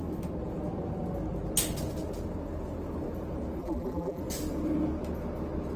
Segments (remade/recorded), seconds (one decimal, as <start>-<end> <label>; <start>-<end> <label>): 0.0-3.6 recorded; 3.6-4.2 remade; 4.2-5.8 recorded